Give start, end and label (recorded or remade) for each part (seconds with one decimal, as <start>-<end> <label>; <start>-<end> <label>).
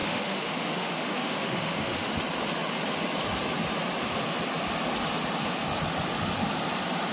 0.0-2.1 remade; 2.1-7.1 recorded